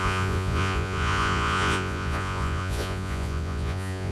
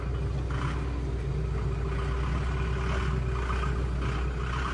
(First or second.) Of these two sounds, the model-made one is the first